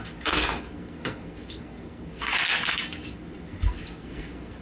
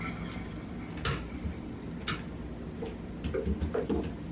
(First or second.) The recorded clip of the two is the second